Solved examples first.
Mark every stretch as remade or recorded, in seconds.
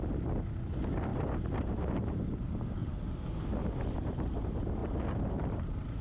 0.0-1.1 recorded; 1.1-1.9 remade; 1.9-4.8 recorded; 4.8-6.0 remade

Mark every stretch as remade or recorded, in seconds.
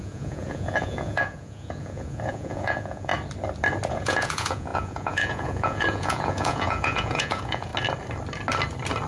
0.0-3.1 remade; 3.1-3.9 recorded; 3.9-7.7 remade; 7.7-9.1 recorded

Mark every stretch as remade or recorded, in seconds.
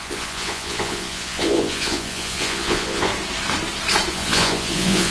0.0-3.1 remade; 3.1-4.1 recorded; 4.1-5.1 remade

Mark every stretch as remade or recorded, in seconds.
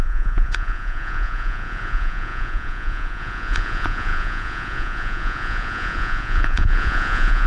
0.0-7.5 remade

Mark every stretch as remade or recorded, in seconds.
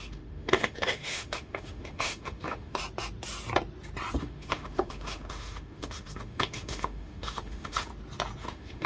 0.0-2.8 remade; 2.8-4.2 recorded; 4.2-7.9 remade; 7.9-8.4 recorded; 8.4-8.9 remade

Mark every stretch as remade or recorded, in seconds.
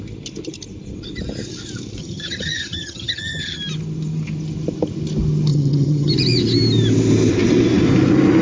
0.0-2.0 recorded; 2.0-3.6 remade; 3.6-5.5 recorded; 5.5-6.1 remade; 6.1-8.4 recorded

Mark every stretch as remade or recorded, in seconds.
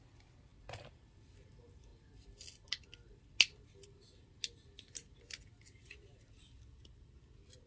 0.0-7.7 recorded